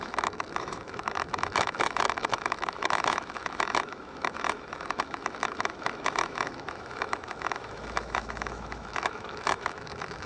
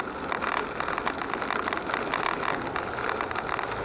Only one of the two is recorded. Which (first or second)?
second